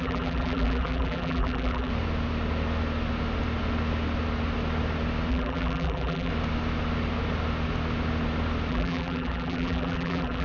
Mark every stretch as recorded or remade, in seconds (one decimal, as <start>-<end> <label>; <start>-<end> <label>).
0.0-1.9 remade; 1.9-5.3 recorded; 5.3-6.3 remade; 6.3-8.7 recorded; 8.7-10.4 remade